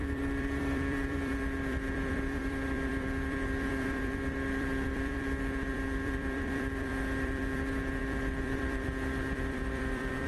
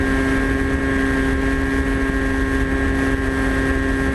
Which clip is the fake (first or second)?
first